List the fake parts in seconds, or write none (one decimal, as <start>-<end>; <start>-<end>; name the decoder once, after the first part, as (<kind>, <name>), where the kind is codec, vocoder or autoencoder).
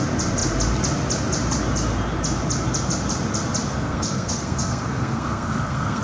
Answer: 3.7-6.0 (codec, SNAC)